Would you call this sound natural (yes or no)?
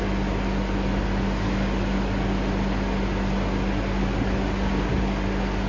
yes